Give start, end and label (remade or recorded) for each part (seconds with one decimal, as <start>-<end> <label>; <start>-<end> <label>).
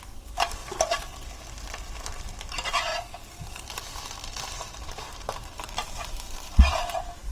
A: 0.0-0.6 remade; 0.6-2.0 recorded; 2.0-2.9 remade; 2.9-3.5 recorded; 3.5-7.3 remade